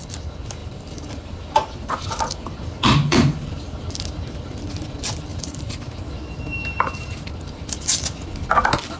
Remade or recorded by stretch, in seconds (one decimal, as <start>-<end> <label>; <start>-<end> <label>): 0.0-0.6 recorded; 0.6-3.8 remade; 3.8-5.3 recorded; 5.3-6.0 remade; 6.0-9.0 recorded

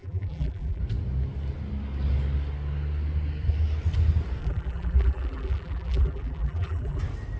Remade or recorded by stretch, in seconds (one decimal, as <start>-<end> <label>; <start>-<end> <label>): 0.0-0.8 remade; 0.8-4.4 recorded; 4.4-7.0 remade; 7.0-7.4 recorded

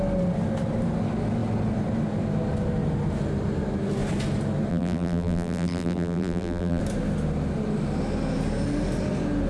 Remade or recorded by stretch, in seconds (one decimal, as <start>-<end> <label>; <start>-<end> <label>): 0.0-4.7 recorded; 4.7-6.8 remade; 6.8-9.5 recorded

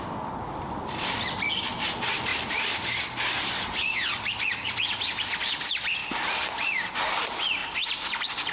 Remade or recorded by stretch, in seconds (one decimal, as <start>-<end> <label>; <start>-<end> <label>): 0.0-6.0 remade; 6.0-6.9 recorded; 6.9-8.5 remade

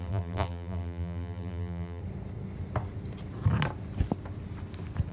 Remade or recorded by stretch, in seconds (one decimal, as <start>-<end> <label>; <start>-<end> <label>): 0.0-2.0 remade; 2.0-5.1 recorded

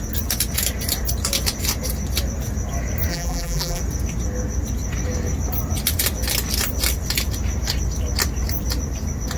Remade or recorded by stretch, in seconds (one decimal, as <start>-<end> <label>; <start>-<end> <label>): 0.0-3.1 recorded; 3.1-3.8 remade; 3.8-9.4 recorded

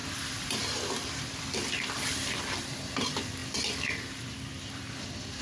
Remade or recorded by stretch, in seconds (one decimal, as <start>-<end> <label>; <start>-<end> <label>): 0.0-5.4 remade

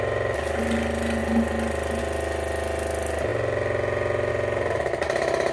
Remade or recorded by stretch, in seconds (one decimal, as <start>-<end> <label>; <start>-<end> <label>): 0.0-5.5 recorded